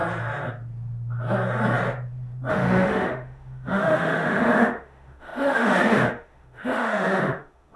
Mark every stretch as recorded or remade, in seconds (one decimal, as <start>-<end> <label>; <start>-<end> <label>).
0.0-2.5 recorded; 2.5-7.8 remade